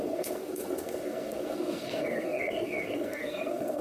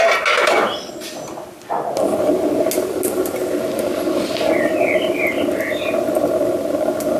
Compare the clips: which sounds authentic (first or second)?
second